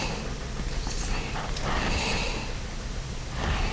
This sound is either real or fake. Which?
real